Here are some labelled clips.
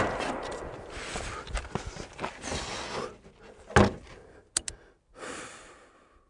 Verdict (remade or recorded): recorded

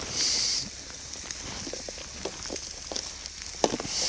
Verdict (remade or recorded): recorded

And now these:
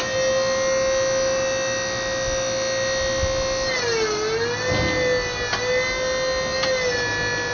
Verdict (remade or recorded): recorded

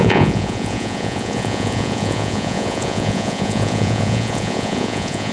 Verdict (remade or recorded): remade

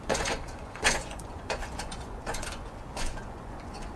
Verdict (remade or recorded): remade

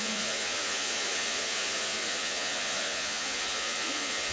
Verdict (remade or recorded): remade